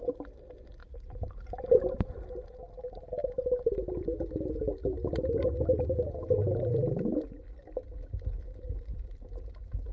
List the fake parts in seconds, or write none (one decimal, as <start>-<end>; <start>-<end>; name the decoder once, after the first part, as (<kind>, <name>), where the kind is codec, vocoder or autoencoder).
0.8-2.1 (vocoder, BigVGAN v2); 3.2-3.7